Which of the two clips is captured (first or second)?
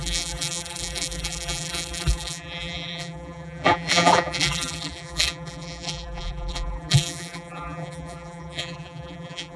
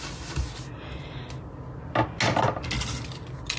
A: second